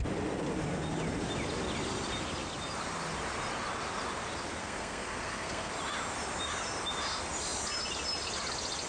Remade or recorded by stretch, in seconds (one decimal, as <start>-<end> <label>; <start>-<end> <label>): 0.0-4.6 recorded; 4.6-5.7 remade; 5.7-8.9 recorded